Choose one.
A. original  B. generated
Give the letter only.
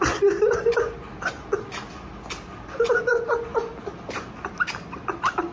A